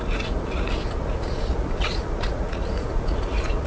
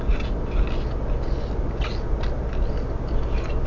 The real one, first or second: second